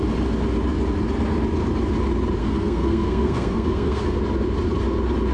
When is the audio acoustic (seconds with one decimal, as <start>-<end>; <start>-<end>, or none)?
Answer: 0.0-2.4; 4.2-5.3

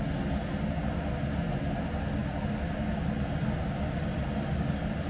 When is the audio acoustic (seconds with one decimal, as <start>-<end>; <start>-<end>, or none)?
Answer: 0.0-5.1

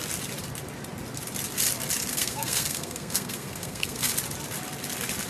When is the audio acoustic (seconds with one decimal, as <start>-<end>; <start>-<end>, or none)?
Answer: 0.0-2.1; 4.1-5.3

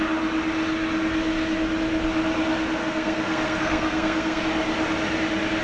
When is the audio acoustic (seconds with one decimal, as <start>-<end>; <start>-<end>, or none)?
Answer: 0.0-2.8; 4.4-5.6